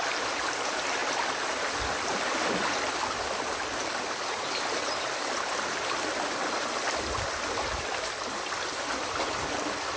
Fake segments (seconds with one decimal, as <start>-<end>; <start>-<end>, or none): none